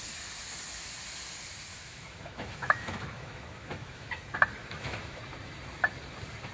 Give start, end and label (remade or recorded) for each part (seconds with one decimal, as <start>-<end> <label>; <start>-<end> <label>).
0.0-1.7 recorded; 1.7-4.1 remade; 4.1-4.6 recorded; 4.6-5.2 remade; 5.2-6.5 recorded